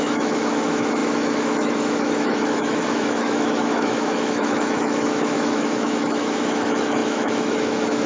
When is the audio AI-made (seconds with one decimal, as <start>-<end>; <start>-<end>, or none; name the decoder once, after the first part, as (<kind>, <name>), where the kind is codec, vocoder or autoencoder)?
0.0-8.1 (autoencoder, DAC-VAE)